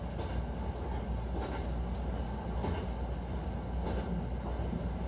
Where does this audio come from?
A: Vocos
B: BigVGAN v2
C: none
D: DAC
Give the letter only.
C